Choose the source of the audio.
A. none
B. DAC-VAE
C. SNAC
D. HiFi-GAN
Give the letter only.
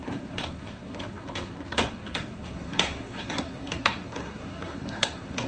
C